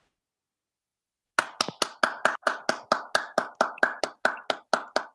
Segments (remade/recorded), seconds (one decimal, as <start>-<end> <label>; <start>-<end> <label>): 0.0-5.1 recorded